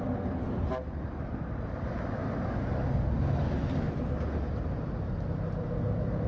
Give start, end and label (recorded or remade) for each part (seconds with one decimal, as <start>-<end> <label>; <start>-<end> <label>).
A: 0.0-6.3 recorded